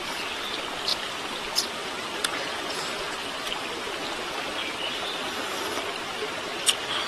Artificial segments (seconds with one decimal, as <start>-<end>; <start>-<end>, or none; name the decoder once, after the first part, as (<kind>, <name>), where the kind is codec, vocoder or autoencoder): 0.9-5.2 (vocoder, BigVGAN v2)